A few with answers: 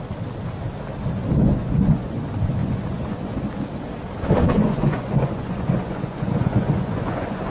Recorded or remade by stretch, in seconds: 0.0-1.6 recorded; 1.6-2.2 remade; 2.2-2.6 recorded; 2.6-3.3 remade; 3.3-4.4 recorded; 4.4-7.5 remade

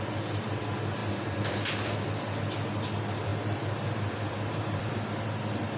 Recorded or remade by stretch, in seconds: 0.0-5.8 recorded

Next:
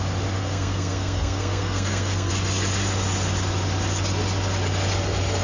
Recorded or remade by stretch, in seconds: 0.0-0.4 recorded; 0.4-2.3 remade; 2.3-5.4 recorded